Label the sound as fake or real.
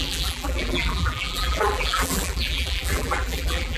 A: fake